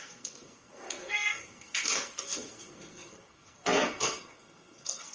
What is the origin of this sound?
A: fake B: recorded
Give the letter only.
A